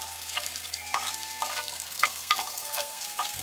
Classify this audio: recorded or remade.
remade